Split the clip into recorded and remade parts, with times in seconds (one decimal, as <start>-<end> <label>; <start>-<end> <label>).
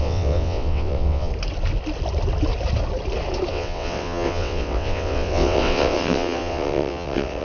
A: 0.0-1.3 remade; 1.3-3.5 recorded; 3.5-7.4 remade